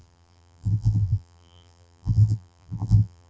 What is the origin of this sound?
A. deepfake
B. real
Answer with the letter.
A